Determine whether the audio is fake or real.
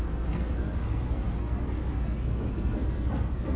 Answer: fake